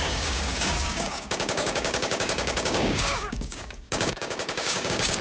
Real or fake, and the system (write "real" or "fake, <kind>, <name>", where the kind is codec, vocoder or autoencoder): fake, codec, DAC